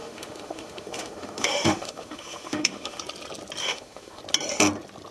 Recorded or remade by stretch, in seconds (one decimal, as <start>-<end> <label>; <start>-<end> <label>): 0.0-3.0 remade; 3.0-3.6 recorded; 3.6-4.2 remade; 4.2-5.1 recorded